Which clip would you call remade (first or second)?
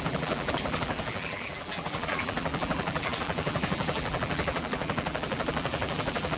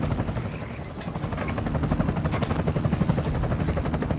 first